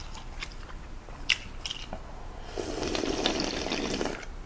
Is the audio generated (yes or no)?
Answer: no